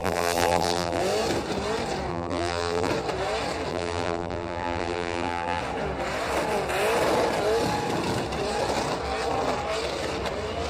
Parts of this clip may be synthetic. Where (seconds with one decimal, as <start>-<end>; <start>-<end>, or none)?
0.0-1.0; 2.1-2.9; 3.7-5.6